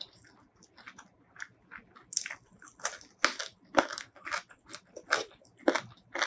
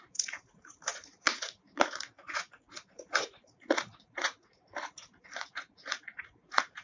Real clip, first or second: first